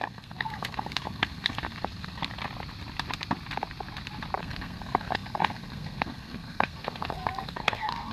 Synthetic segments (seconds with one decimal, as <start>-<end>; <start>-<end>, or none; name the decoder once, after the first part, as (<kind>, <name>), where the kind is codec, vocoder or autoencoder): 0.0-2.2 (codec, SNAC); 4.4-8.1